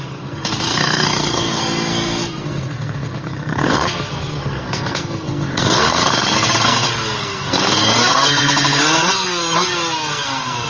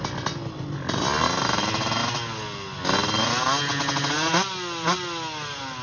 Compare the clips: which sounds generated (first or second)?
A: first